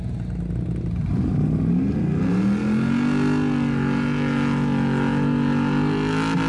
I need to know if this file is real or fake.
real